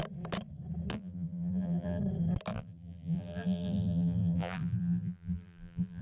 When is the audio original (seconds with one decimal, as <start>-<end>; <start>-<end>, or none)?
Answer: 0.0-0.9; 2.0-2.5